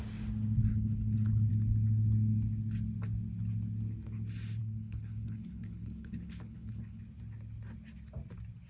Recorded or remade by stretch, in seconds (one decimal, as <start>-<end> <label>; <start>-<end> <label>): 0.0-0.7 recorded; 0.7-1.5 remade; 1.5-4.6 recorded; 4.6-7.0 remade; 7.0-8.7 recorded